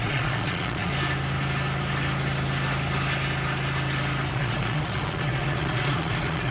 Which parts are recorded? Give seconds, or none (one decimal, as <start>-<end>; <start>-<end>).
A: 0.9-4.3